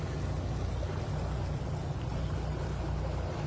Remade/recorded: recorded